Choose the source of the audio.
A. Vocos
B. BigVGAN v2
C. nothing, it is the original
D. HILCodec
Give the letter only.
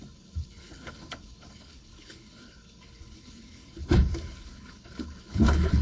D